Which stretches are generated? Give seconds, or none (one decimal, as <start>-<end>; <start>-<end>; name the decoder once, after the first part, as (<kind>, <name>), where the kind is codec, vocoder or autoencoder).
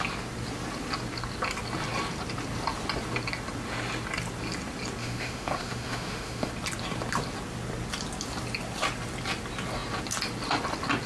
5.0-6.5 (autoencoder, DAC-VAE)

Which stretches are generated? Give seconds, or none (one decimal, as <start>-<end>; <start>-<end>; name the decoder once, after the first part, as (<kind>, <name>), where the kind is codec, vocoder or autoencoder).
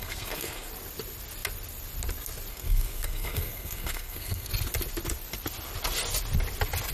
0.0-0.7 (codec, SNAC); 2.5-4.5